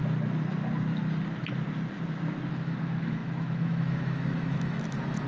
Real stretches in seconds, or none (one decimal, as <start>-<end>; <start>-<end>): 0.0-2.5

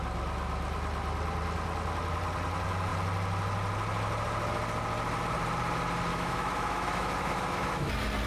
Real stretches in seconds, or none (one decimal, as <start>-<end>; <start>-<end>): 0.0-6.1; 7.9-8.3